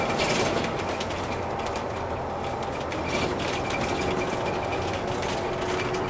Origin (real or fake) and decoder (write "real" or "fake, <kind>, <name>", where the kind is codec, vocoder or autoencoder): real